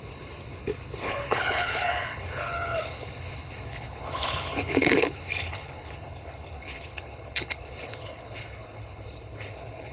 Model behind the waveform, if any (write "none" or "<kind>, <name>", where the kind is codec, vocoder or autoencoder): codec, HILCodec